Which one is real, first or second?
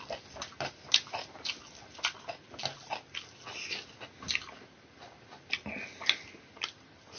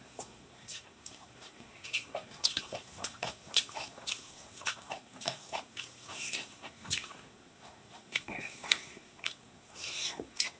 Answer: first